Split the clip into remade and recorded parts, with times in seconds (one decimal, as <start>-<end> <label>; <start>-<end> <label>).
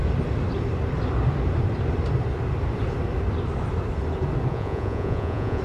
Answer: 0.0-4.5 recorded; 4.5-5.6 remade